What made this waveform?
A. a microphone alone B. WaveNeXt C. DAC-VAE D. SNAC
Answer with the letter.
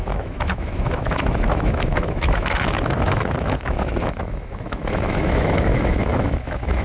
C